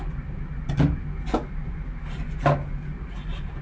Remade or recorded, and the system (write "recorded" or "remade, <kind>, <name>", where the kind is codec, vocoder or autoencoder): recorded